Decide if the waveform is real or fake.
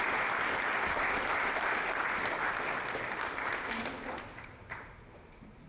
real